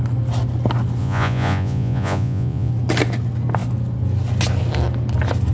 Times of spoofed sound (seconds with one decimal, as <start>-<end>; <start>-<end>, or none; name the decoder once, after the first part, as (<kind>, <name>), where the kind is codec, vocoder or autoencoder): 1.0-2.7 (vocoder, Vocos)